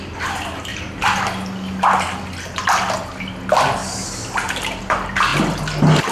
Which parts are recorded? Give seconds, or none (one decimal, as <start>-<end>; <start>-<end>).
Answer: 0.0-6.1